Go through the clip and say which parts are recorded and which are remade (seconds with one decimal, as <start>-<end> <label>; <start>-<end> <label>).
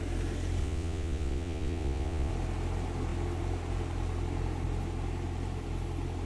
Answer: 0.0-0.6 recorded; 0.6-2.3 remade; 2.3-6.3 recorded